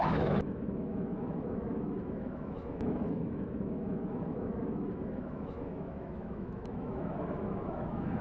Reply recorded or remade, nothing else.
remade